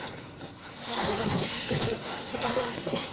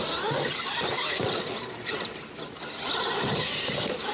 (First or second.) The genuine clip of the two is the second